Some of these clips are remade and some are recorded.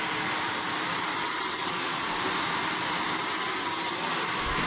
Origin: recorded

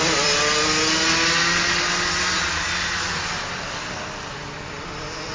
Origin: recorded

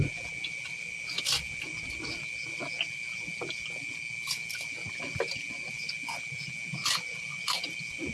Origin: recorded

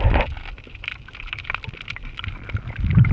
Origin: recorded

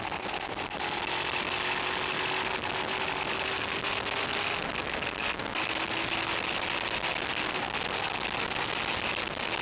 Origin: recorded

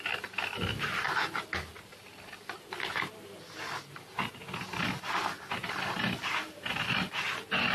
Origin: recorded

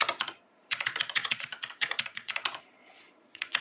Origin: remade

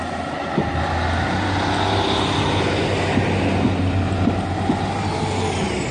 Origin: recorded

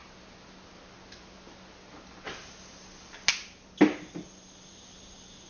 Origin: recorded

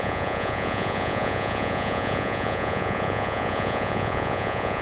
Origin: remade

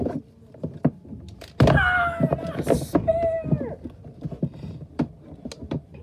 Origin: recorded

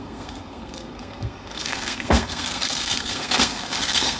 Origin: remade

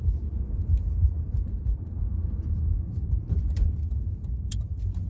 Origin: remade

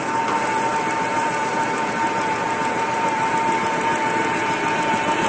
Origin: recorded